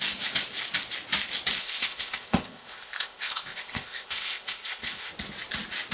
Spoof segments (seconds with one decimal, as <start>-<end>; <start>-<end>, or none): 1.6-5.1